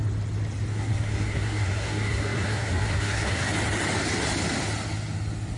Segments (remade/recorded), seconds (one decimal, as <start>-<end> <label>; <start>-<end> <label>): 0.0-0.7 recorded; 0.7-3.5 remade; 3.5-5.6 recorded